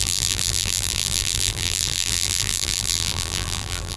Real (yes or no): no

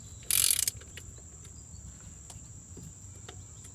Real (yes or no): yes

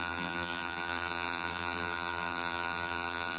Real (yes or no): no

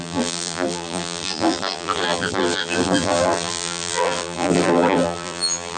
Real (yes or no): no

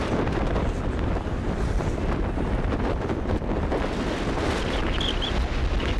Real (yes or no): yes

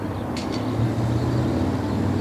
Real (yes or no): yes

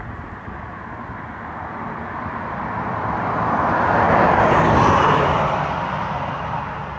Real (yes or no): no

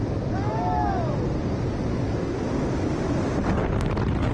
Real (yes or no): yes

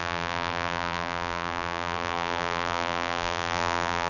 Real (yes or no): no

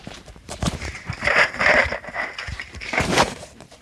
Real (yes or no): no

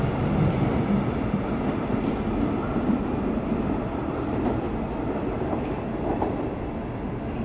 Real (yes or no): yes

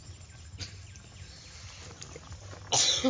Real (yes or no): yes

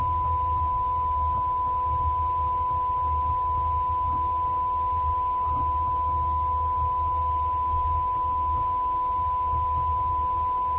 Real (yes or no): yes